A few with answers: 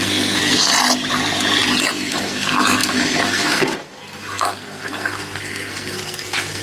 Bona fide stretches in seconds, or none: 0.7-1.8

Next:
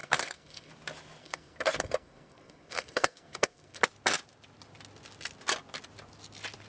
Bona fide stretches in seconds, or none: 0.7-1.2; 3.8-6.7

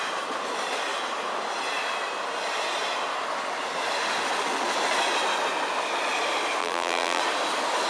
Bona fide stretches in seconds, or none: 0.0-6.6; 7.2-7.9

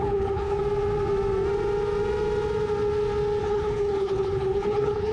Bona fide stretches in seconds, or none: 0.6-3.4

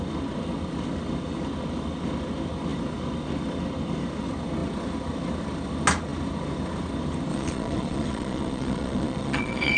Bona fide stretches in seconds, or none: 0.0-7.3